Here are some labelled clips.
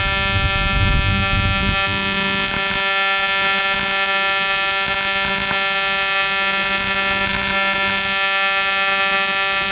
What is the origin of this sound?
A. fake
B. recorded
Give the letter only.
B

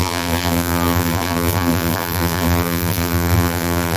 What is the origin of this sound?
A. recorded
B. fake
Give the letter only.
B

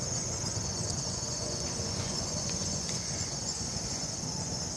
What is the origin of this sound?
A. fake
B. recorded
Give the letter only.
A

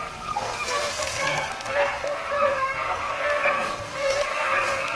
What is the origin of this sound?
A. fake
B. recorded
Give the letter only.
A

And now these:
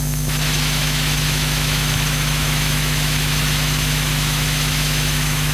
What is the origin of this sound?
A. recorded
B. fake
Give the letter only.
B